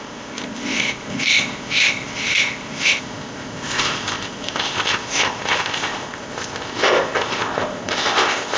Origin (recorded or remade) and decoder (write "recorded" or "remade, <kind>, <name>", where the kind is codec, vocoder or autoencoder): remade, codec, ZipCodec